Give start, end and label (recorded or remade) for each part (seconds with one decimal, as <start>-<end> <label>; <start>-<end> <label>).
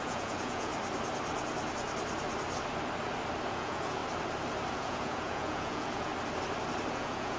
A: 0.0-0.7 remade; 0.7-3.5 recorded; 3.5-4.0 remade; 4.0-4.7 recorded; 4.7-6.1 remade; 6.1-6.9 recorded; 6.9-7.4 remade